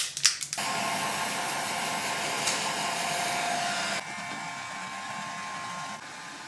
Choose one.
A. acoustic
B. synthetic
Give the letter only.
A